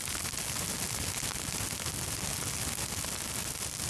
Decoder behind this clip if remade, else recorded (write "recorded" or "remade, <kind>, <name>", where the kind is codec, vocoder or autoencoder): recorded